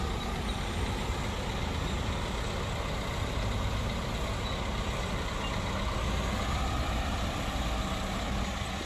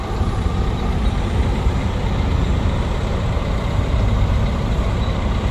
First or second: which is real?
first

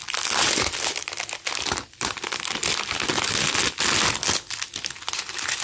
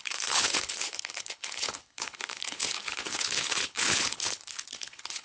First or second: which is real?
first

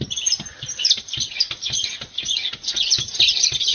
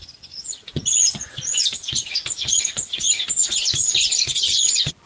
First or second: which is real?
first